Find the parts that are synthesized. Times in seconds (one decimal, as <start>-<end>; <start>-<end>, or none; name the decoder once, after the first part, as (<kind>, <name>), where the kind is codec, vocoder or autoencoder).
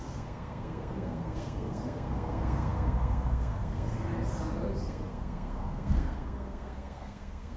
0.0-4.1 (codec, SNAC); 4.8-7.6